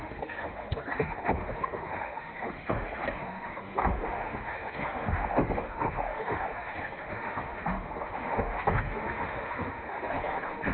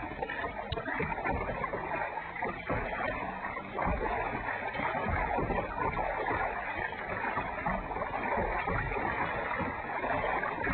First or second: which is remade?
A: first